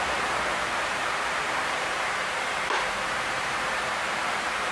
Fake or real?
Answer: fake